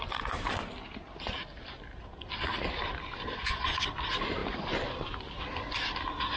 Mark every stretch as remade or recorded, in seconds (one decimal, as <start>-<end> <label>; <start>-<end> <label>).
0.0-6.4 recorded